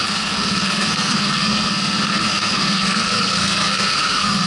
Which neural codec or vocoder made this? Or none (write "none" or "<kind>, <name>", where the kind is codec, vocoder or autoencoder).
codec, SNAC